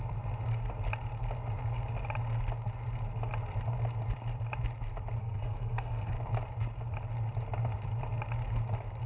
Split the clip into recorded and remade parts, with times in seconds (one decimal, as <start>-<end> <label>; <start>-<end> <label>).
0.0-5.2 recorded; 5.2-6.1 remade; 6.1-9.1 recorded